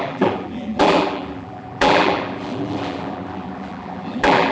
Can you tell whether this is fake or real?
fake